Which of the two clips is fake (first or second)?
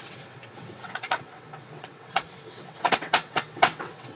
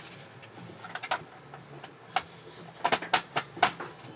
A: first